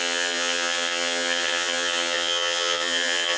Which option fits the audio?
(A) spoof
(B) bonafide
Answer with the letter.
A